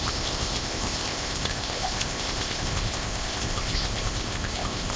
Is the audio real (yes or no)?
no